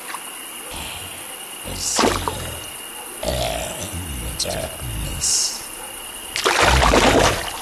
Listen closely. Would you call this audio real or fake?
real